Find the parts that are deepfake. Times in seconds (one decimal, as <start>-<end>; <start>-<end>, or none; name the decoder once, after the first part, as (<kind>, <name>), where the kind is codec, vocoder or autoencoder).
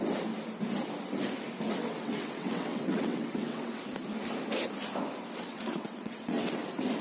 1.8-3.8 (vocoder, WaveNeXt); 5.5-6.6